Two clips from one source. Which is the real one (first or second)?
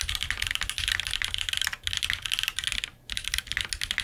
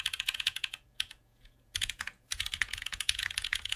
first